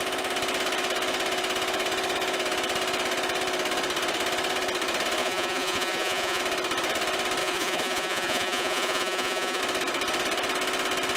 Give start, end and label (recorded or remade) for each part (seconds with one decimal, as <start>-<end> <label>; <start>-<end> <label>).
0.0-5.2 recorded; 5.2-6.4 remade; 6.4-7.4 recorded; 7.4-9.6 remade; 9.6-11.2 recorded